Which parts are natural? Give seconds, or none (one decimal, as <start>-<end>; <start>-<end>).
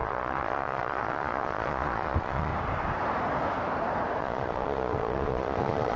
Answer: 2.5-4.2